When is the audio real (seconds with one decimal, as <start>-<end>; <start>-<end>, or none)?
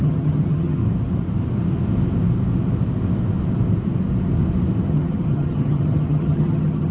0.8-4.9